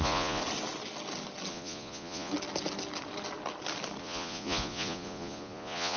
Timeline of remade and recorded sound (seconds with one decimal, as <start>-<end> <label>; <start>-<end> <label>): 0.0-0.4 remade; 0.4-1.5 recorded; 1.5-2.3 remade; 2.3-4.0 recorded; 4.0-6.0 remade